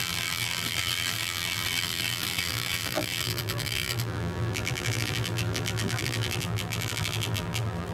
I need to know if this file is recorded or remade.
remade